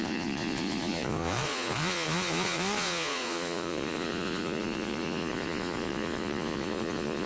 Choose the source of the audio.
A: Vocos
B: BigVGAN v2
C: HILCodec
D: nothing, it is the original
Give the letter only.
A